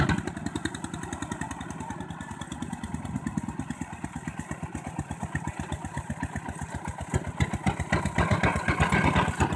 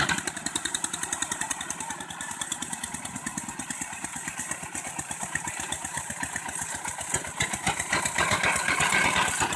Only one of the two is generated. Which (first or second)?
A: second